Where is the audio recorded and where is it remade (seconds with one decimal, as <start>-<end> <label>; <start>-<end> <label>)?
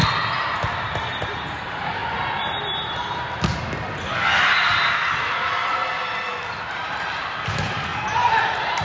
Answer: 0.0-1.5 recorded; 1.5-2.0 remade; 2.0-6.6 recorded; 6.6-7.9 remade; 7.9-8.4 recorded; 8.4-8.8 remade